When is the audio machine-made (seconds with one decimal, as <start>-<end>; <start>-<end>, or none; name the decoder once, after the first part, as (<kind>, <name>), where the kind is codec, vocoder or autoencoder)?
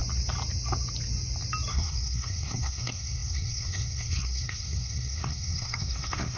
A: 1.7-6.4 (codec, SNAC)